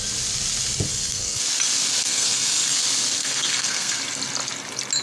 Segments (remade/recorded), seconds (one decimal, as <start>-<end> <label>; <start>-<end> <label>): 0.0-0.9 recorded; 0.9-1.4 remade; 1.4-2.0 recorded; 2.0-2.8 remade; 2.8-3.2 recorded; 3.2-4.0 remade; 4.0-5.0 recorded